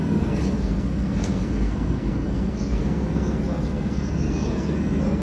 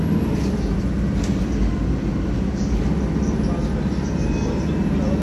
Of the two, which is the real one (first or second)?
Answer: second